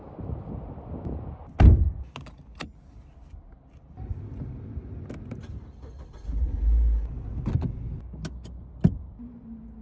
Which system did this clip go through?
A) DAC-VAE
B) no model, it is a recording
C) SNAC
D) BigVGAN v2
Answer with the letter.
B